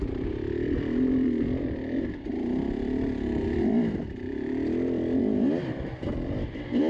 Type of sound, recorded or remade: remade